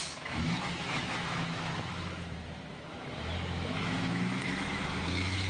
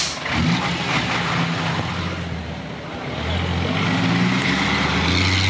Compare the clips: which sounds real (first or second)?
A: second